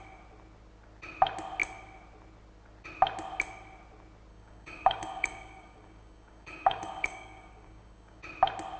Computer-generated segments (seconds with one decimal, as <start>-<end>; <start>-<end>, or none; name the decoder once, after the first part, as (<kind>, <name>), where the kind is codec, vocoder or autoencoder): 4.3-8.2 (codec, DAC)